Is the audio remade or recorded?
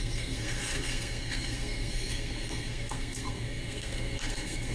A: remade